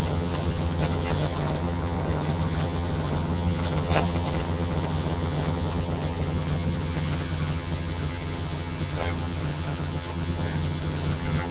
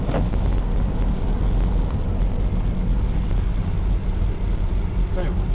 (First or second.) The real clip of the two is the second